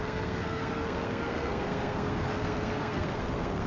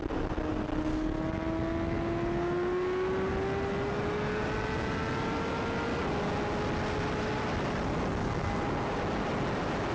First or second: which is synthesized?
first